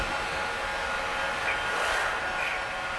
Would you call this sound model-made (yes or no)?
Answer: no